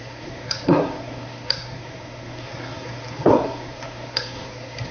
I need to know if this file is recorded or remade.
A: remade